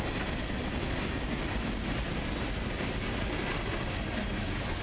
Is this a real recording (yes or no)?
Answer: yes